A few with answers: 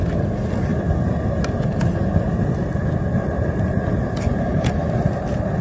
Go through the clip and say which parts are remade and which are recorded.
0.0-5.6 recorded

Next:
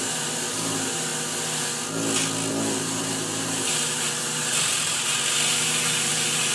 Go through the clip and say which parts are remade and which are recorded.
0.0-1.1 remade; 1.1-2.5 recorded; 2.5-6.5 remade

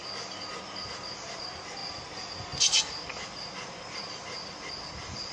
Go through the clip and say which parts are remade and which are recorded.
0.0-5.3 recorded

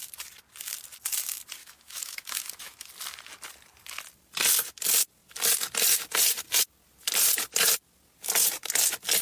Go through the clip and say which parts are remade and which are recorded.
0.0-1.6 recorded; 1.6-2.9 remade; 2.9-9.2 recorded

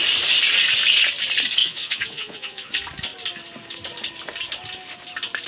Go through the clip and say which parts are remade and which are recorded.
0.0-1.6 recorded; 1.6-2.7 remade; 2.7-5.5 recorded

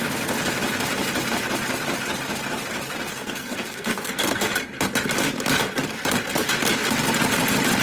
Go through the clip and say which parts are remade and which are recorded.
0.0-3.1 recorded; 3.1-4.4 remade; 4.4-7.8 recorded

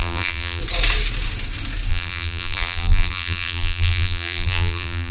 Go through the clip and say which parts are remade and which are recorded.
0.0-0.6 remade; 0.6-1.9 recorded; 1.9-5.1 remade

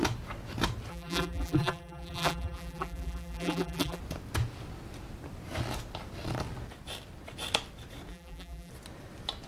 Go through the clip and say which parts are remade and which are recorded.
0.0-0.9 recorded; 0.9-4.0 remade; 4.0-8.1 recorded; 8.1-8.7 remade; 8.7-9.5 recorded